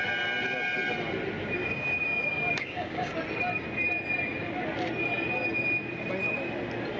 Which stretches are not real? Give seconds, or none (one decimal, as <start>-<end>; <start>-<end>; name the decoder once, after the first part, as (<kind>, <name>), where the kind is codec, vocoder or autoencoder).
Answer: 1.6-3.1 (codec, DAC)